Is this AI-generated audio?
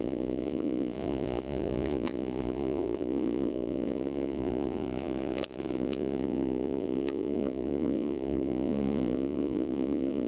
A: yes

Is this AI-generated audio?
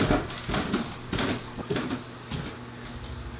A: no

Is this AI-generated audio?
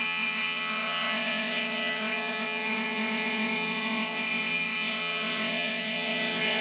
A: yes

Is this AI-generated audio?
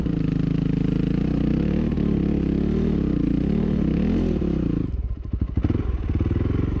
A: no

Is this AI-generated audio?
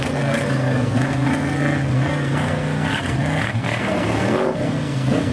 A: yes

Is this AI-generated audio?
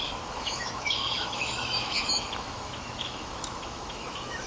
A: yes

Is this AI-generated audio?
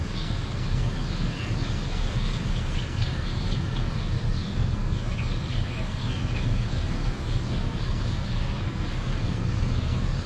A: yes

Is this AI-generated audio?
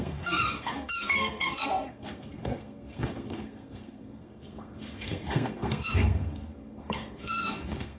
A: yes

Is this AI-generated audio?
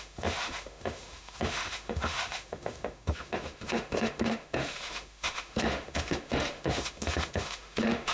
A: yes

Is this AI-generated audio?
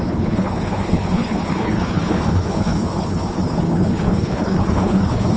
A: yes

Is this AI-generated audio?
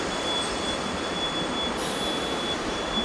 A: no